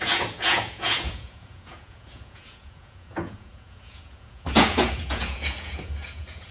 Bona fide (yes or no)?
no